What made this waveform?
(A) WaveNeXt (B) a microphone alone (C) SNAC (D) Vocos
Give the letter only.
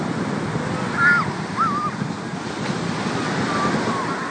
B